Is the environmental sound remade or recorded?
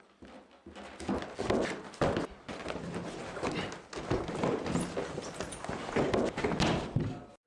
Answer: recorded